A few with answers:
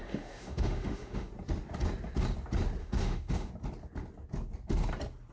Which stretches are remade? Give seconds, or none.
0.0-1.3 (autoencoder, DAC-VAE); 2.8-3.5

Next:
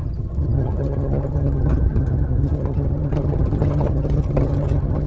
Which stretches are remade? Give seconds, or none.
0.0-5.1 (vocoder, HiFi-GAN)

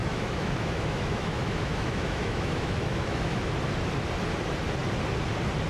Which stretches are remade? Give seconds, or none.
0.0-3.4 (autoencoder, DAC-VAE)

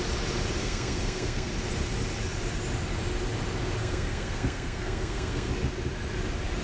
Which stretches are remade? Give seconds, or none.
0.6-1.5 (codec, SNAC); 3.8-5.5

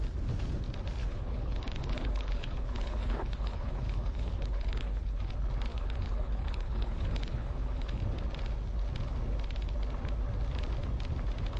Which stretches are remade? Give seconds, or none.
1.0-5.3 (codec, HILCodec); 5.7-8.0

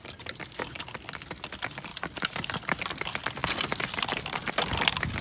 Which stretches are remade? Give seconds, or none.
none